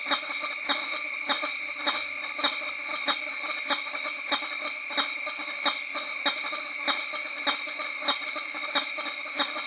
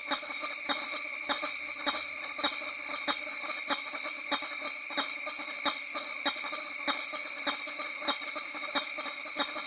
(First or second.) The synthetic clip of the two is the second